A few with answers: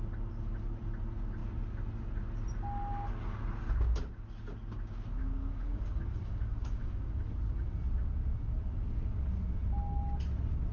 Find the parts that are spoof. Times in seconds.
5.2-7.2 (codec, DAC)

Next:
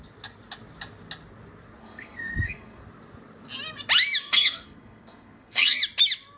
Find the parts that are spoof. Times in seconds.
1.8-2.8 (codec, SNAC); 4.2-5.8

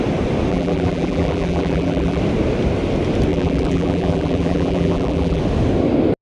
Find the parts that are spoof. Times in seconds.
0.5-2.2 (vocoder, BigVGAN v2); 3.3-5.4

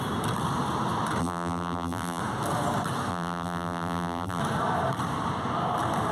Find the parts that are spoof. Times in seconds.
1.2-2.2 (vocoder, BigVGAN v2); 3.1-4.4

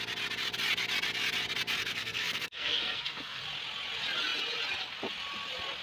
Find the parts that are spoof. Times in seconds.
1.8-3.4 (codec, SNAC)

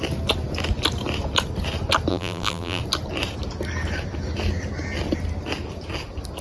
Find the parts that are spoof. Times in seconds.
2.1-2.8 (vocoder, BigVGAN v2)